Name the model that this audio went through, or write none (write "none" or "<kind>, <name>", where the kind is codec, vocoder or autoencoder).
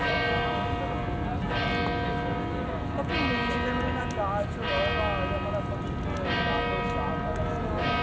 none